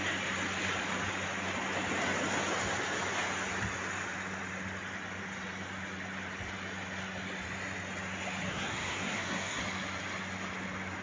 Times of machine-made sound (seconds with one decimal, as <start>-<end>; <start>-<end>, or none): 8.5-9.6